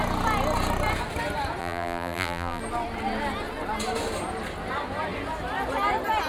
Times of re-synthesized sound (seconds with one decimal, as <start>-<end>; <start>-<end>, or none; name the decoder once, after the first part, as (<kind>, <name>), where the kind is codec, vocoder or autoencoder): 1.6-2.6 (vocoder, BigVGAN v2)